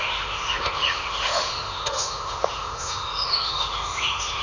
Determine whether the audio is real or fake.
fake